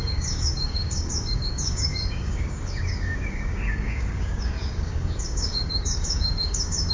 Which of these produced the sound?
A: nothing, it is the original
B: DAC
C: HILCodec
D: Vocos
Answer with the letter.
B